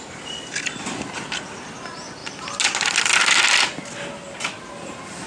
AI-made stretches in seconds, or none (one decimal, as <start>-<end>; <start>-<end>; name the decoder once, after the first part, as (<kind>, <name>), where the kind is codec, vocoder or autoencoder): none

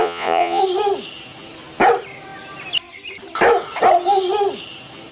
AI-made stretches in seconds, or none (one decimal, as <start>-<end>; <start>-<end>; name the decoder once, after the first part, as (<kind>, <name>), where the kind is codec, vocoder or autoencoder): 0.0-0.6 (vocoder, Vocos)

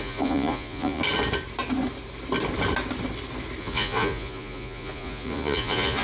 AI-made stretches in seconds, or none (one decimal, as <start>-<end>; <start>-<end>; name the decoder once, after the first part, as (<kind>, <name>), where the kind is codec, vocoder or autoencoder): 0.0-1.0 (vocoder, Vocos); 3.6-6.0

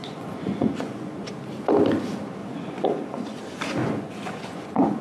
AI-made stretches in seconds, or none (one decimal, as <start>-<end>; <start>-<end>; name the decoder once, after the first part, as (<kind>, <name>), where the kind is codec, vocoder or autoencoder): 0.0-1.3 (vocoder, Vocos); 2.4-3.4; 3.8-5.0

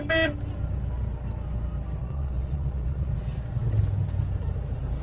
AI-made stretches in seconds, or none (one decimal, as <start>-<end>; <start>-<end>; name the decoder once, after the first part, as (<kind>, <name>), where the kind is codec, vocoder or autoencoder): 2.0-3.1 (vocoder, Vocos)

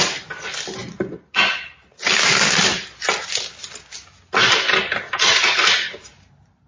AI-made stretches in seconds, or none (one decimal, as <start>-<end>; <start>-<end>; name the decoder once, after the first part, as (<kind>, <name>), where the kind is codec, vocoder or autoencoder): none